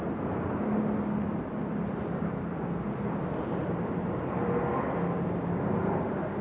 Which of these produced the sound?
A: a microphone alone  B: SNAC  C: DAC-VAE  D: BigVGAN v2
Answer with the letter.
A